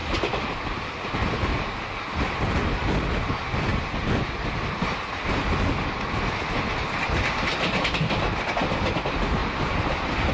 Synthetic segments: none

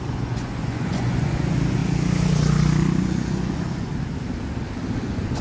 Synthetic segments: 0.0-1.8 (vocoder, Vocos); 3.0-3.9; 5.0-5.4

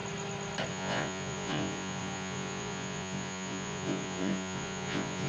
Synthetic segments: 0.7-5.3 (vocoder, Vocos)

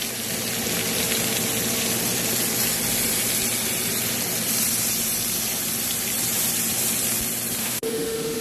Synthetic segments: 7.6-8.4 (autoencoder, DAC-VAE)

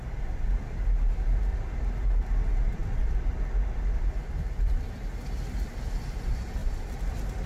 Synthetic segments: 1.5-2.3 (vocoder, BigVGAN v2); 6.6-7.1